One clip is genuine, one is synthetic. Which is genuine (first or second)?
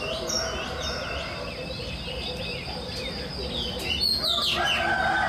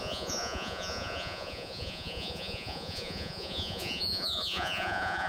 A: first